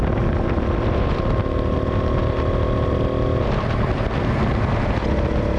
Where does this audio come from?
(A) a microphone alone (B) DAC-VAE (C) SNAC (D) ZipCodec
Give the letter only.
A